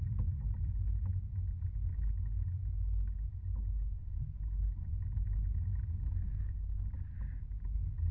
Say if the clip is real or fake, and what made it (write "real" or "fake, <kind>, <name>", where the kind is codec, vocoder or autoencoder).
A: real